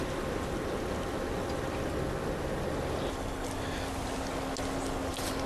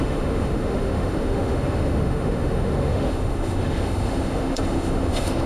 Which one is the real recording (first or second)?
first